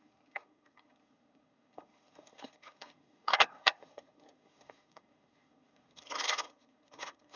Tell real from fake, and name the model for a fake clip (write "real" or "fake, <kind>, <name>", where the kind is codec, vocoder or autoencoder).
fake, codec, SNAC